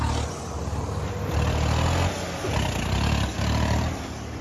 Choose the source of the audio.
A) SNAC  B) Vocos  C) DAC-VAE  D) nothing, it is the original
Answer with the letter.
D